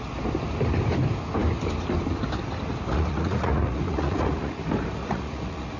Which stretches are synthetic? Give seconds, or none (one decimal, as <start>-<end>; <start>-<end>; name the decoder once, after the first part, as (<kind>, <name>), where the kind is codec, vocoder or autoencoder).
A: 2.9-4.6 (vocoder, Vocos); 5.0-5.8